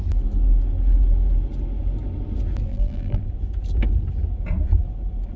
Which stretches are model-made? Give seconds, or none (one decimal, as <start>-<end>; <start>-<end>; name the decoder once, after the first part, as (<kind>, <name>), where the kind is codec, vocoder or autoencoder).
2.7-3.2 (vocoder, BigVGAN v2)